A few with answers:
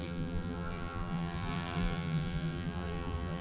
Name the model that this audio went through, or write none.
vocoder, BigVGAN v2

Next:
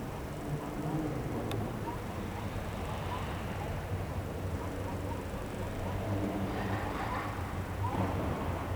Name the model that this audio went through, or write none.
vocoder, BigVGAN v2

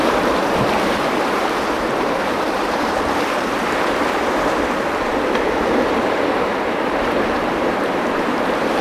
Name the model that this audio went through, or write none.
vocoder, BigVGAN v2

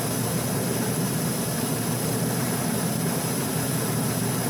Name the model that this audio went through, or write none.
vocoder, BigVGAN v2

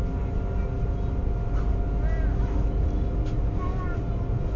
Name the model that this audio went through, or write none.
none